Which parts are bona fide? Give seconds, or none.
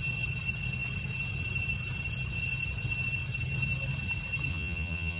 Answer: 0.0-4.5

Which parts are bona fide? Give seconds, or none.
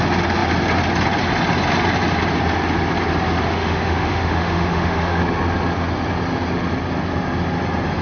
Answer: 0.0-3.5; 5.2-8.0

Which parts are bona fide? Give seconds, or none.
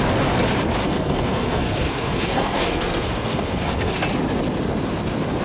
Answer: 0.0-0.8; 4.0-5.4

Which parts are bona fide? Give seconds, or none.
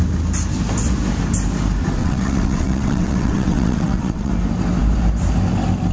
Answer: 0.0-2.0; 4.3-5.9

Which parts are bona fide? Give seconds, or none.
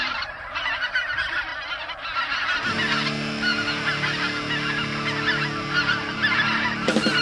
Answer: 1.5-5.8